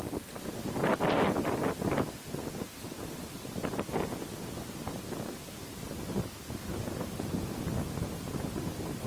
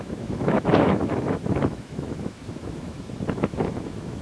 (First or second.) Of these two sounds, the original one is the first